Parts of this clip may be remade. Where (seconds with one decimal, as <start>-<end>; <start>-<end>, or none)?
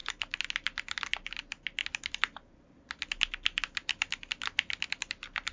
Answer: none